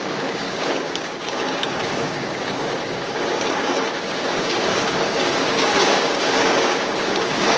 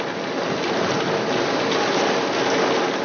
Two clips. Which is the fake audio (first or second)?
first